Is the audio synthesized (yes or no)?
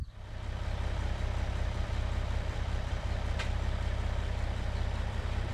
yes